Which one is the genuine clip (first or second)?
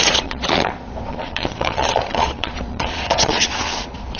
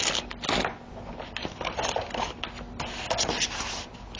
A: second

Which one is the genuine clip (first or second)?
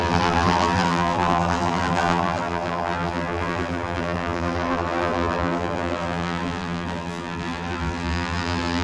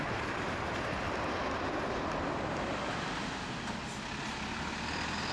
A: second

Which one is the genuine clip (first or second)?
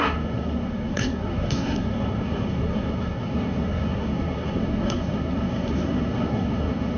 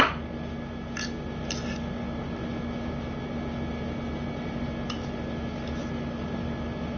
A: second